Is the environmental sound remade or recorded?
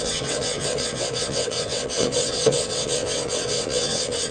remade